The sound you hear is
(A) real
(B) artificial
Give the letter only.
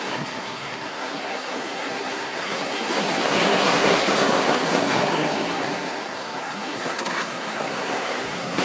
B